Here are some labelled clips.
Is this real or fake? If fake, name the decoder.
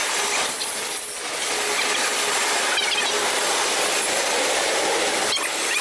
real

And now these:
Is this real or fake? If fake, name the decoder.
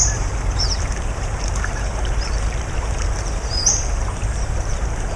fake, vocoder, BigVGAN v2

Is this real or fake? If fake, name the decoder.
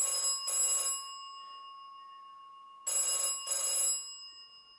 real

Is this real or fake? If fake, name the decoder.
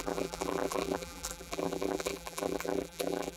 fake, vocoder, BigVGAN v2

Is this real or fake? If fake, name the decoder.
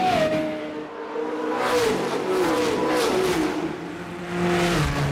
real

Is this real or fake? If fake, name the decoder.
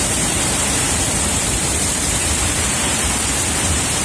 fake, vocoder, BigVGAN v2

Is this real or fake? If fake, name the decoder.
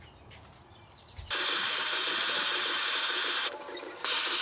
fake, vocoder, BigVGAN v2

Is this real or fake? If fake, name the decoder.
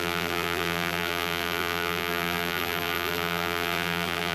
fake, vocoder, BigVGAN v2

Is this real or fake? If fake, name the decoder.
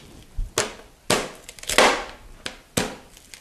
real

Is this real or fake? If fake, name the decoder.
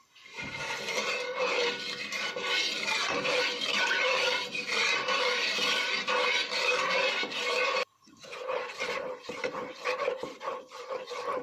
fake, vocoder, BigVGAN v2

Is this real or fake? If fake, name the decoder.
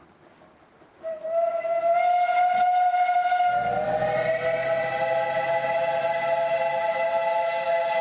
real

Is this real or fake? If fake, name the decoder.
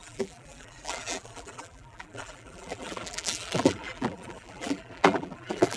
fake, vocoder, BigVGAN v2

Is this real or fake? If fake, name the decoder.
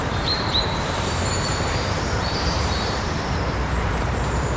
fake, vocoder, BigVGAN v2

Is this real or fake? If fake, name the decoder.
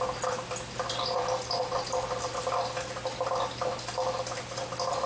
real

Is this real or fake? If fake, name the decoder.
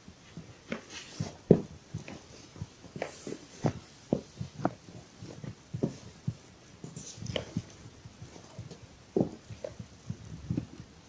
real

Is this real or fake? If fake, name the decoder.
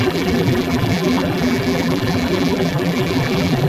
fake, vocoder, BigVGAN v2